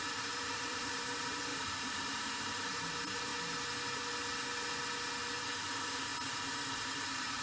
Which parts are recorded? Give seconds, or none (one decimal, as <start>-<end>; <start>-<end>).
3.3-5.4; 6.1-6.8